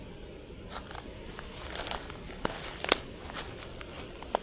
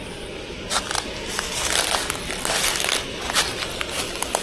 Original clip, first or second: second